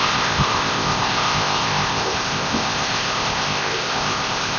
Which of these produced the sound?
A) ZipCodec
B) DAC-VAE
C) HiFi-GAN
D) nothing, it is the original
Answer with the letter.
A